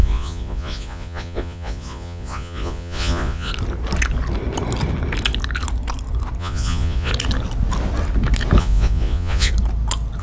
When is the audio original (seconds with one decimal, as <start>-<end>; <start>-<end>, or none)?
3.5-6.4; 7.1-8.6; 9.5-10.2